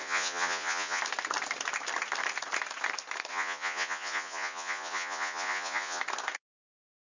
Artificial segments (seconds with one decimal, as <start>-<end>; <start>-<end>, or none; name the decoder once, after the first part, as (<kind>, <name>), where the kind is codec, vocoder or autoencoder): 0.0-1.0 (vocoder, Vocos); 3.3-6.0